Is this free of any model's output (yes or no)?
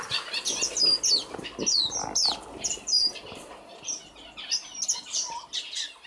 yes